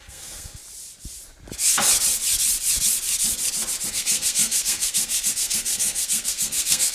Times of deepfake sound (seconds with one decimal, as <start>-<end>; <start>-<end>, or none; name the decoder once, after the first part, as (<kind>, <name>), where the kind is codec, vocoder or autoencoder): 0.0-0.6 (codec, SNAC); 3.9-6.9